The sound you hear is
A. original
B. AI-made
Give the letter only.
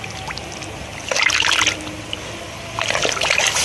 A